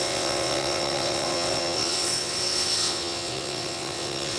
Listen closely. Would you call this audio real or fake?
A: fake